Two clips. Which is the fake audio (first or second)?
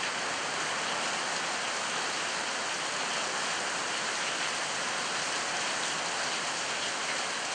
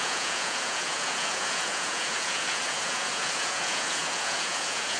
second